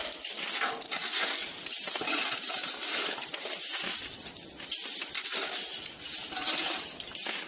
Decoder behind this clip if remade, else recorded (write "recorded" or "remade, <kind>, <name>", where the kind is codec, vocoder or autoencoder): recorded